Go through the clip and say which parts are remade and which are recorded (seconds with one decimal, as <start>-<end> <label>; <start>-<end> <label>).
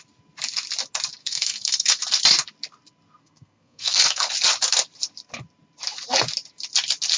0.0-1.2 recorded; 1.2-2.0 remade; 2.0-3.2 recorded; 3.2-4.3 remade; 4.3-7.2 recorded